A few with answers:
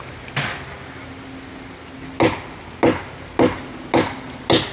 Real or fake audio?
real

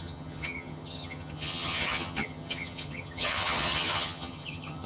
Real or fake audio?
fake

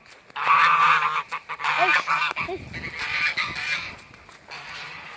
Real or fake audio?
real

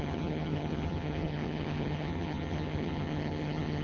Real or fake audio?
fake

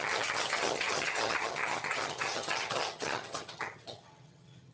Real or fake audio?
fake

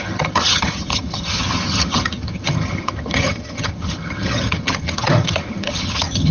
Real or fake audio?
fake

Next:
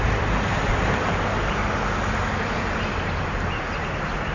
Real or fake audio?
real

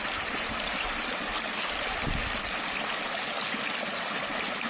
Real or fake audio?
real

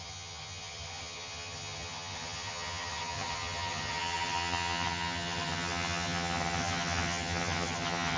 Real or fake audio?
fake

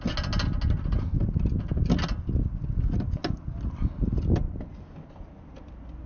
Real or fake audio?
real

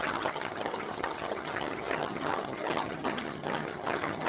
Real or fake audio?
fake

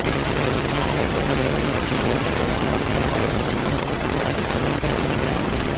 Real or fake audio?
fake